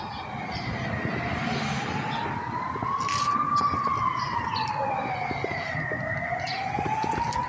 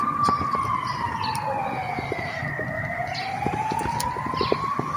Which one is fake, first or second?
second